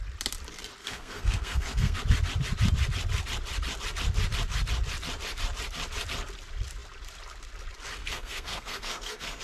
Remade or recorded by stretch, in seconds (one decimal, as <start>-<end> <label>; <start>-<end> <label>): 0.0-0.8 recorded; 0.8-2.0 remade; 2.0-8.0 recorded; 8.0-9.4 remade

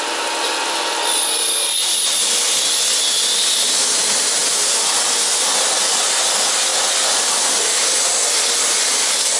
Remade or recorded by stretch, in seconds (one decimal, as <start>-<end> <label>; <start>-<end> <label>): 0.0-9.4 recorded

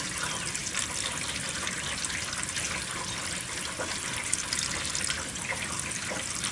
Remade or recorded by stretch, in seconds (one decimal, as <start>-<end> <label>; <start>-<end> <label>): 0.0-6.5 recorded